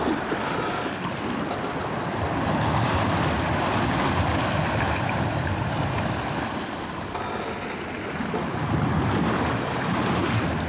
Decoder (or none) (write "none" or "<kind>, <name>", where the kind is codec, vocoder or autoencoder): none